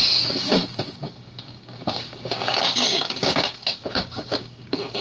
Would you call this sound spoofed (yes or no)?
yes